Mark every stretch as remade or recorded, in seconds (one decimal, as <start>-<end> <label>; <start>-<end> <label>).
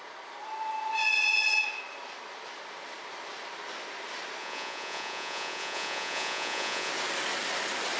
0.0-4.4 recorded; 4.4-6.9 remade; 6.9-8.0 recorded